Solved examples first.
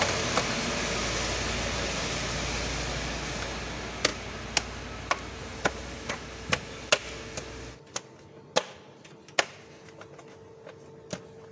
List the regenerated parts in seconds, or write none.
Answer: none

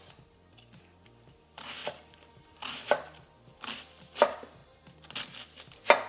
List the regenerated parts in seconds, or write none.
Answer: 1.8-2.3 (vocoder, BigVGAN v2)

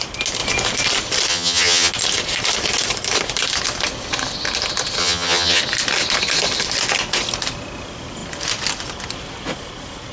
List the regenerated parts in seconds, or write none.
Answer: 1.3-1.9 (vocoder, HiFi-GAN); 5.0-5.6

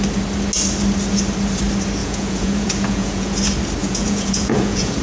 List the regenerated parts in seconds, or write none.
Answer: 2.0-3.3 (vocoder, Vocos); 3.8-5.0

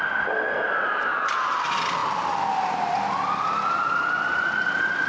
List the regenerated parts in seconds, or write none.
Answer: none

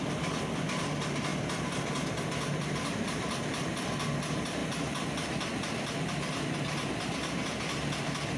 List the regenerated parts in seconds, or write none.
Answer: 0.0-1.3 (vocoder, BigVGAN v2); 2.5-4.6